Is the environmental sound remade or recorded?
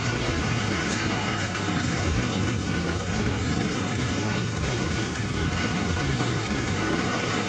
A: remade